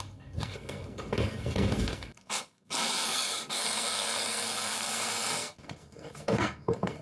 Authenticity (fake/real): fake